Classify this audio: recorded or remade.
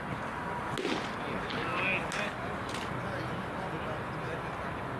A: recorded